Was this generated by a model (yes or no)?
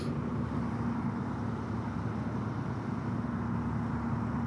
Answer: no